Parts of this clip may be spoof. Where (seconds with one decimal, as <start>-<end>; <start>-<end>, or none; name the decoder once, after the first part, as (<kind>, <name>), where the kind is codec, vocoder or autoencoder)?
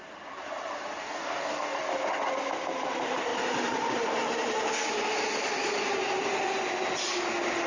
1.0-1.8 (codec, DAC)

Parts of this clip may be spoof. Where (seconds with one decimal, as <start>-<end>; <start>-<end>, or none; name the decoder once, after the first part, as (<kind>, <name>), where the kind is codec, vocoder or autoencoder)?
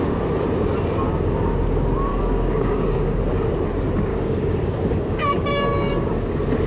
2.1-3.5 (codec, DAC); 4.1-6.3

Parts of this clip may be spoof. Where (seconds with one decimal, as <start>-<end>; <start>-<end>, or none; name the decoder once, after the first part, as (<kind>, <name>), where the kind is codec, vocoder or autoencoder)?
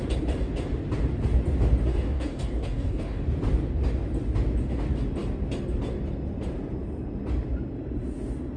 1.9-3.2 (codec, DAC)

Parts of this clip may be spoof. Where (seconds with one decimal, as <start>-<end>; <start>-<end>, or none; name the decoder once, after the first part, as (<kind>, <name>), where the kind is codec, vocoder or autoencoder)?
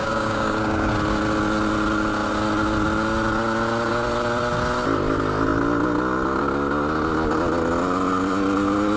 0.0-0.9 (codec, DAC)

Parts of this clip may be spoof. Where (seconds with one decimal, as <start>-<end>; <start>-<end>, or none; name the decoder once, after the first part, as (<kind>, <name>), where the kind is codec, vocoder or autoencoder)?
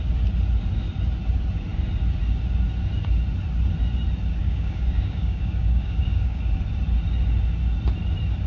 4.4-6.4 (codec, DAC)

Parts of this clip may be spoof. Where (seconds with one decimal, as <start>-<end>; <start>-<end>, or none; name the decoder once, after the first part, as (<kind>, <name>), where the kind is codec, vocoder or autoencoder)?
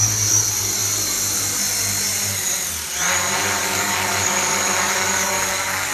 3.6-5.9 (codec, DAC)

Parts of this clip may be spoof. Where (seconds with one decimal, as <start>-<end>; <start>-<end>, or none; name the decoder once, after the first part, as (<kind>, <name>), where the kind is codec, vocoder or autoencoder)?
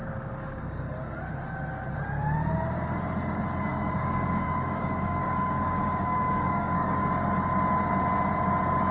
0.0-0.8 (codec, DAC); 3.7-7.1